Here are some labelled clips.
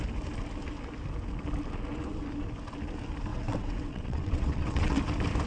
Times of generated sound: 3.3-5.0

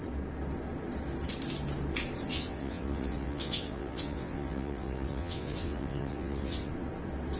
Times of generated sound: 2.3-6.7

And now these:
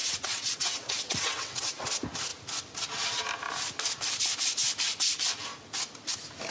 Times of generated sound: 0.0-1.8

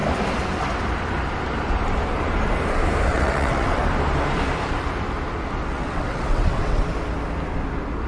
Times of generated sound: 3.1-3.8; 5.7-6.8

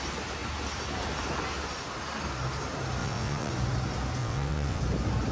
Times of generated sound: 3.0-3.5; 4.2-4.8

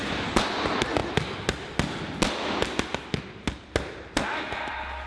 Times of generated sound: none

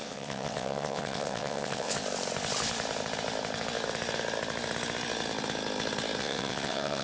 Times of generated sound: 0.0-2.0; 6.2-7.0

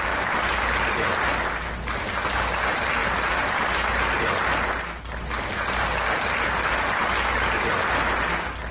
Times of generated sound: none